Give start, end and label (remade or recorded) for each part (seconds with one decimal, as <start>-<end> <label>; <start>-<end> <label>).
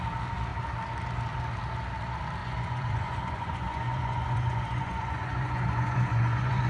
0.0-2.4 recorded; 2.4-6.7 remade